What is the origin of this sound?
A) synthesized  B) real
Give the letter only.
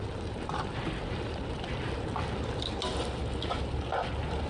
B